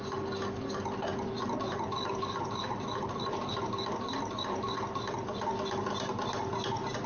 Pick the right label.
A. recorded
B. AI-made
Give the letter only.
A